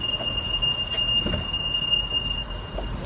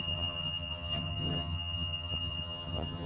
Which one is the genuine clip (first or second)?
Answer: first